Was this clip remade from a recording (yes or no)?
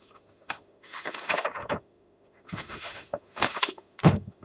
yes